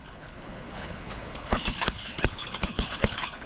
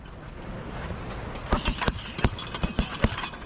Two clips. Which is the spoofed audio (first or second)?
first